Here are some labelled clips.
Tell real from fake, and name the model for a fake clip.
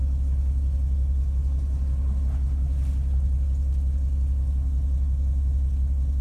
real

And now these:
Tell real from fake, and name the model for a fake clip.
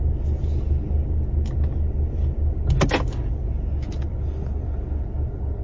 real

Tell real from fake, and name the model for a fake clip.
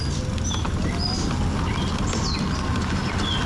real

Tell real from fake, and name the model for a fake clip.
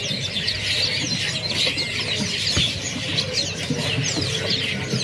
real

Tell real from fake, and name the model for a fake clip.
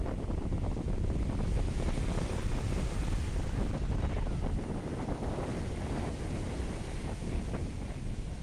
real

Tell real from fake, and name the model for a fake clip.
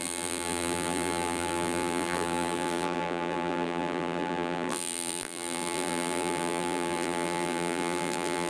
fake, vocoder, BigVGAN v2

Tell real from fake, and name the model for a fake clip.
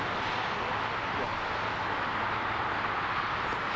real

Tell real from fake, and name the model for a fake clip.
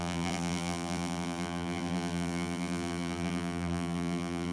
fake, vocoder, BigVGAN v2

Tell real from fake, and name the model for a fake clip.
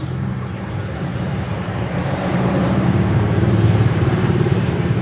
fake, vocoder, BigVGAN v2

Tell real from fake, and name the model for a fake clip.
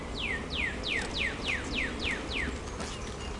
real